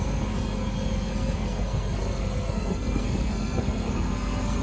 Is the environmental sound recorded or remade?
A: remade